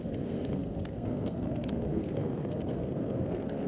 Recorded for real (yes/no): no